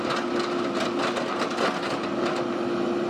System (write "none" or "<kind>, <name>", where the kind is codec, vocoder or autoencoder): none